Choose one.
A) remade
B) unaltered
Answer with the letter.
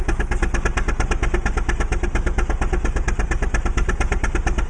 B